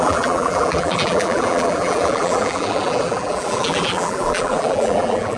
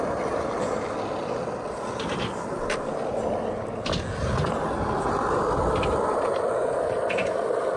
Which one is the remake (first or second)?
first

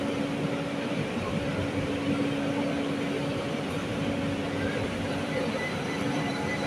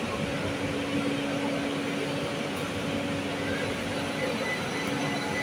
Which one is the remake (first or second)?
first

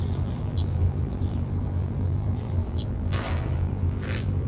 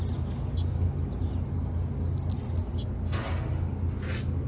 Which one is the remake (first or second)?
first